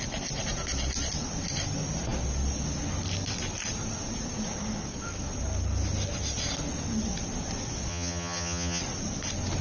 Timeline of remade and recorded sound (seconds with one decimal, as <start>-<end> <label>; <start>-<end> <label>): 0.0-7.9 recorded; 7.9-8.8 remade; 8.8-9.6 recorded